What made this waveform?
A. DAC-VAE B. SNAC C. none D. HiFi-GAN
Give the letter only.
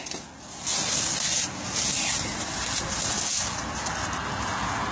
C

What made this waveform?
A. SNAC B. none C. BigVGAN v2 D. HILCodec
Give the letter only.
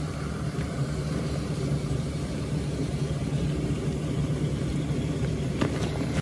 C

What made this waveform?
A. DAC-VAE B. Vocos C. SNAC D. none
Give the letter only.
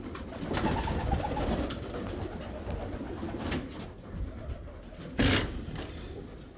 D